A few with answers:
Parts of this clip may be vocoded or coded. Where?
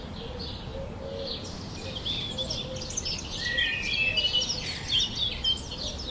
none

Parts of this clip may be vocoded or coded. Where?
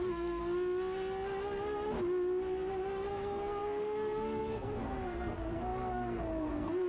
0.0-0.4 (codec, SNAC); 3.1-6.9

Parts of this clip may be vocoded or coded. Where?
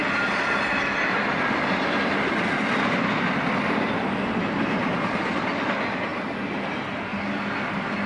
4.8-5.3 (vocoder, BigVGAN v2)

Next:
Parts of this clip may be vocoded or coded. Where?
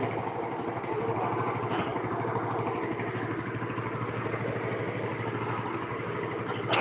none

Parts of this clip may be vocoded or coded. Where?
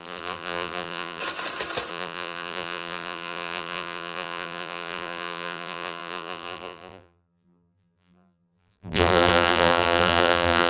0.0-1.2 (vocoder, BigVGAN v2); 1.9-10.7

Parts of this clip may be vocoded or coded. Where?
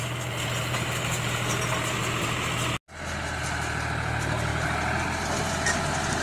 none